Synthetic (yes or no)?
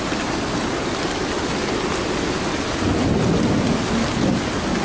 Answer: no